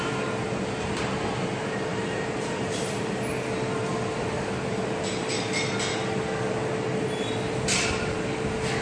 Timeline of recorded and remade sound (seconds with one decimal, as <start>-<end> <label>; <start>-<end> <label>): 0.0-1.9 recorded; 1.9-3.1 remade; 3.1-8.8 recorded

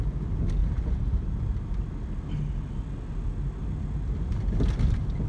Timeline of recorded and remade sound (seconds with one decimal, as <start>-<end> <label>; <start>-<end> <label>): 0.0-0.6 recorded; 0.6-1.8 remade; 1.8-5.3 recorded

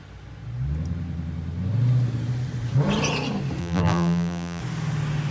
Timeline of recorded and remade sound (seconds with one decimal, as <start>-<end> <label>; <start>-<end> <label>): 0.0-3.6 recorded; 3.6-4.6 remade; 4.6-5.3 recorded